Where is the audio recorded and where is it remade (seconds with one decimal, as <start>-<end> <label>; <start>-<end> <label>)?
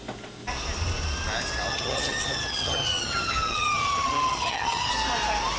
0.0-1.7 recorded; 1.7-4.9 remade; 4.9-5.6 recorded